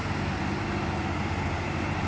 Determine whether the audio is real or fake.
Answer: real